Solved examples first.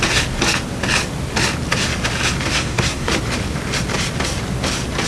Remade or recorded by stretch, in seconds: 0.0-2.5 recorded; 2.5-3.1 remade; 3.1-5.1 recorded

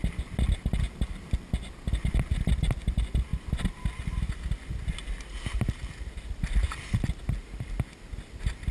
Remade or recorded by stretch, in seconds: 0.0-8.7 recorded

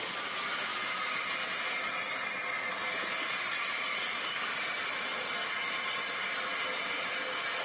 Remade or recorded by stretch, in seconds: 0.0-4.0 recorded; 4.0-4.8 remade; 4.8-7.6 recorded

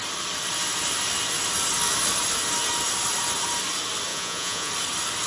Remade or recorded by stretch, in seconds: 0.0-4.1 recorded; 4.1-4.7 remade; 4.7-5.3 recorded